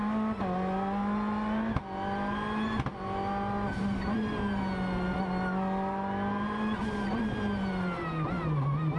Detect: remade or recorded recorded